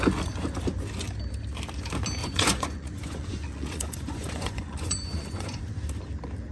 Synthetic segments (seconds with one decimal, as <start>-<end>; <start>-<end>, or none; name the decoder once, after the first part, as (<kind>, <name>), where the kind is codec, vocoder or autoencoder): 2.2-5.6 (vocoder, Vocos)